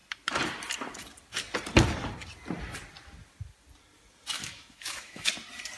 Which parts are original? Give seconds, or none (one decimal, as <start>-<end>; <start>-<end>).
0.0-4.4; 5.3-5.8